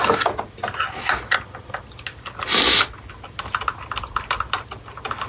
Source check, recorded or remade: recorded